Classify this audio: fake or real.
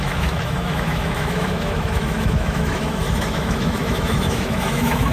fake